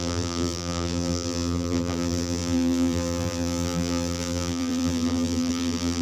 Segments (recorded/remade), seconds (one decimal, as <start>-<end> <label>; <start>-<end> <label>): 0.0-6.0 remade